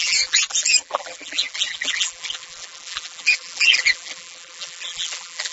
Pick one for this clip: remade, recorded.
remade